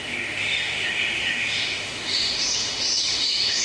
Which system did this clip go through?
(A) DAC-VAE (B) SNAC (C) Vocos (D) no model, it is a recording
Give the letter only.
A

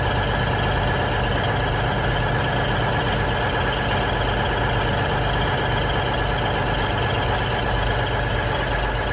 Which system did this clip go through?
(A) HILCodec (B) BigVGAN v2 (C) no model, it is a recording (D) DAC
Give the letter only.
C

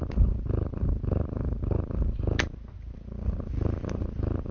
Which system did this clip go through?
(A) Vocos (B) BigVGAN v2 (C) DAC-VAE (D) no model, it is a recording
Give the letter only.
D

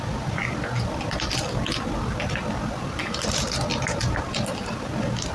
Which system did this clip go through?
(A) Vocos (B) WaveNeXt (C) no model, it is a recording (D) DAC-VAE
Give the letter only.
C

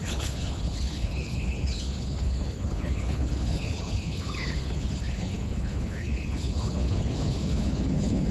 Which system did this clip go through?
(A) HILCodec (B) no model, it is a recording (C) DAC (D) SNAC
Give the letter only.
A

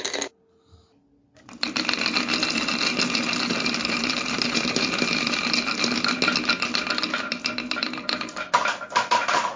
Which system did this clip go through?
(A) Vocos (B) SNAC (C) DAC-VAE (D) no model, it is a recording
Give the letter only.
D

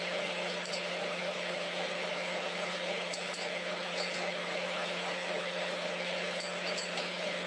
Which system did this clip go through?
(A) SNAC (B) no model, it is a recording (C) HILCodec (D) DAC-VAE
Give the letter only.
C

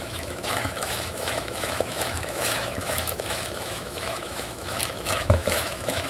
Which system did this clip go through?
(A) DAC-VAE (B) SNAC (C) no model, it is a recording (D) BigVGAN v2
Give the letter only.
A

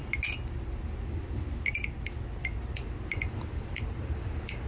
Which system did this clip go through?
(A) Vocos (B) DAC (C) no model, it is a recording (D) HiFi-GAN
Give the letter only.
C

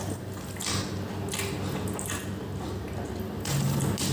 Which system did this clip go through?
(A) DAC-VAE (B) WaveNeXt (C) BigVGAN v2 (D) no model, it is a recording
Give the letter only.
D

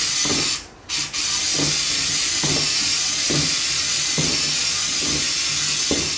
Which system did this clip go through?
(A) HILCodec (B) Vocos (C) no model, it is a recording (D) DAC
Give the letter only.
C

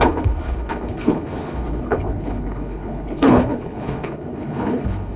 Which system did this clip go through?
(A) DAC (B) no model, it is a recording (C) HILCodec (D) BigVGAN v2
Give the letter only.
C